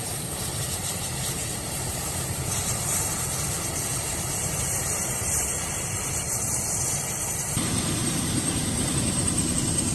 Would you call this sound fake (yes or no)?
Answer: yes